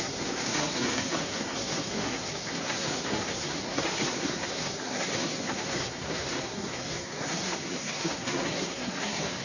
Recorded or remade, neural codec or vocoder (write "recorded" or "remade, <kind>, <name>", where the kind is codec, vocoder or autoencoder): remade, codec, SNAC